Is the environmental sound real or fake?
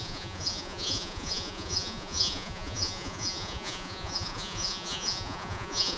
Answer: fake